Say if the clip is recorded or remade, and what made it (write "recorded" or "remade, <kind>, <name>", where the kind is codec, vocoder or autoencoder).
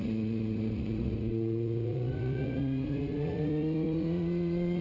remade, vocoder, Vocos